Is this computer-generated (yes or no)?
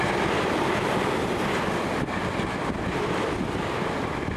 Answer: no